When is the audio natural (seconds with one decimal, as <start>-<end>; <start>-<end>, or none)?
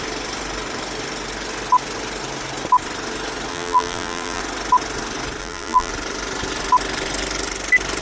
0.0-3.5; 4.4-5.4; 5.9-8.0